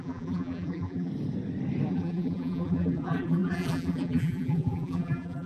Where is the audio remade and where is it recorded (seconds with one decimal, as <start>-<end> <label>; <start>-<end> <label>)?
0.0-1.1 remade; 1.1-1.9 recorded; 1.9-5.5 remade